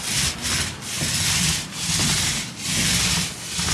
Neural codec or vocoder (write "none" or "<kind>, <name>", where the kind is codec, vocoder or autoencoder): none